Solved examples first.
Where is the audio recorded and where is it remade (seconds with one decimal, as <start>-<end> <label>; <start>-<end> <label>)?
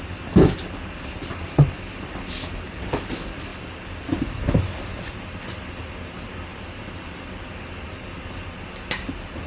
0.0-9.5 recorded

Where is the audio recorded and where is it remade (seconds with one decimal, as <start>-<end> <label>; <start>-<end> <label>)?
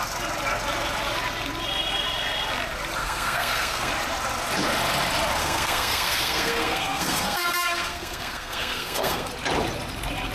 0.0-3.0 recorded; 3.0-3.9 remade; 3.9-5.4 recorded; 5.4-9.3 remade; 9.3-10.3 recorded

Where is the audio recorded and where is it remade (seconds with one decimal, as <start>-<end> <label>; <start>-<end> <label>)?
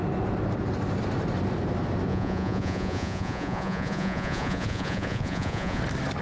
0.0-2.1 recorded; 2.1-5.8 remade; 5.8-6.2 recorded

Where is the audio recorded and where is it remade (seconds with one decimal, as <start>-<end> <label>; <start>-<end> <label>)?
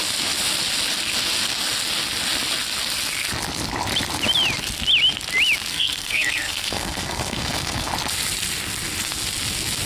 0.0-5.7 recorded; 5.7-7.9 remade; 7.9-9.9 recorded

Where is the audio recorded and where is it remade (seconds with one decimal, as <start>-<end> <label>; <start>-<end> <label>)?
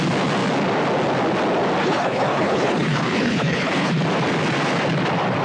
0.0-1.8 recorded; 1.8-3.9 remade; 3.9-5.4 recorded